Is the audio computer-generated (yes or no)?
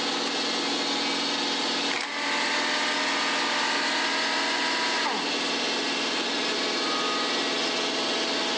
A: no